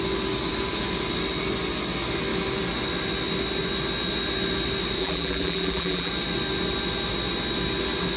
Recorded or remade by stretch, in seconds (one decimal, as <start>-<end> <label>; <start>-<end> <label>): 0.0-5.0 recorded; 5.0-6.1 remade; 6.1-8.2 recorded